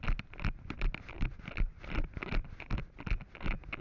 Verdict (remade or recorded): recorded